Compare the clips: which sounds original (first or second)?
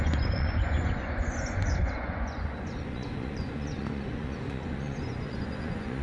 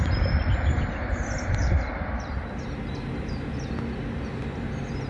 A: second